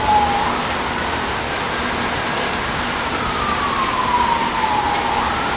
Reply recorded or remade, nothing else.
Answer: recorded